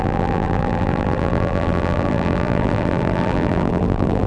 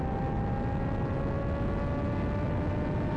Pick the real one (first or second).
second